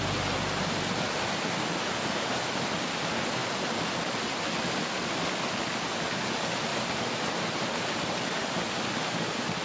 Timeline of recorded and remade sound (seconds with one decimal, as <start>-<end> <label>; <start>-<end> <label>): 0.0-9.6 recorded